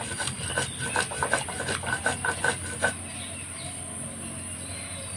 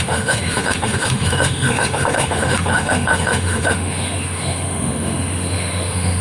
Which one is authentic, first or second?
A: first